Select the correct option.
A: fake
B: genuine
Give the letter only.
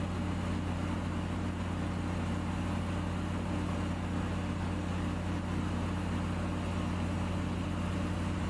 B